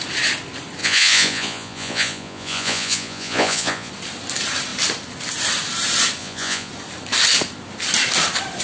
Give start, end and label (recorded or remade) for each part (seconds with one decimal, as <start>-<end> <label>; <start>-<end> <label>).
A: 0.0-0.8 recorded; 0.8-3.9 remade; 3.9-6.2 recorded; 6.2-6.7 remade; 6.7-8.6 recorded